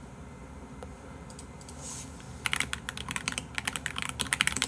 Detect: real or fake real